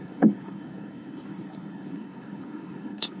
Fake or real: fake